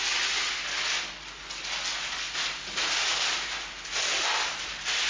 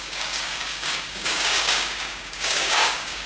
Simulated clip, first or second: second